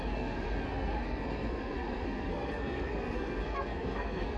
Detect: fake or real fake